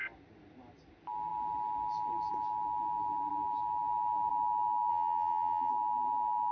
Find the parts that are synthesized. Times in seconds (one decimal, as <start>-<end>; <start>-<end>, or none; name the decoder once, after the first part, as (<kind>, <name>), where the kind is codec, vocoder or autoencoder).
4.9-5.7 (vocoder, BigVGAN v2)